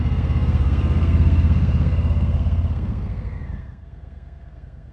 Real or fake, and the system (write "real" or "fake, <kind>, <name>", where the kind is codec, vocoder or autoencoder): fake, codec, SNAC